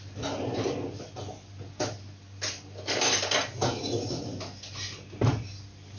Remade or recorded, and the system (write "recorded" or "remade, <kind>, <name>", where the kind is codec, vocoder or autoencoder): recorded